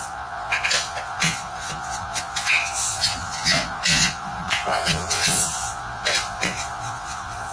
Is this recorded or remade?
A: remade